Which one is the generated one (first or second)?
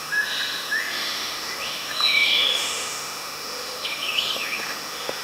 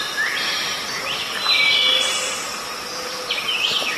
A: first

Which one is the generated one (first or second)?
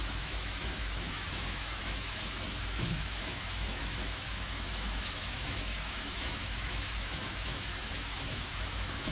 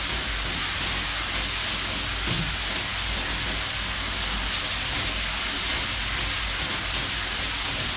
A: first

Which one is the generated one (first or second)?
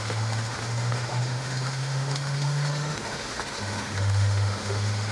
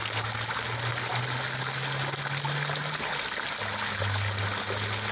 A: first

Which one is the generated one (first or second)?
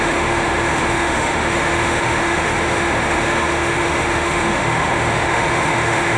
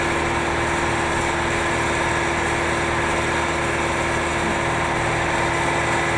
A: first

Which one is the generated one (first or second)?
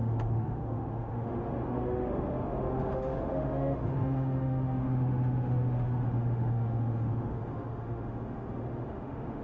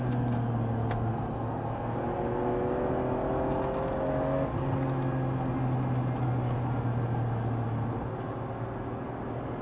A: first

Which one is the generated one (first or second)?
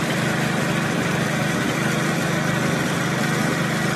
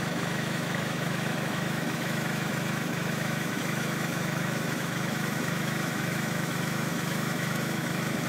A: second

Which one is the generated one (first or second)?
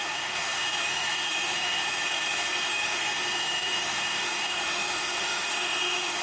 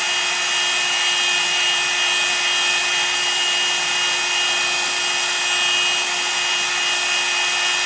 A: first